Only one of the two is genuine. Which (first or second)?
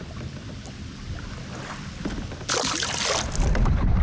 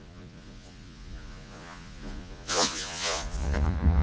first